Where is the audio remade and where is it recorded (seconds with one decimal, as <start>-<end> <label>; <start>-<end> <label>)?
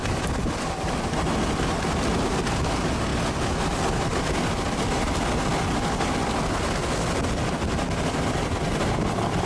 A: 0.0-9.5 recorded